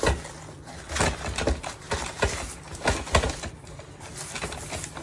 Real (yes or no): yes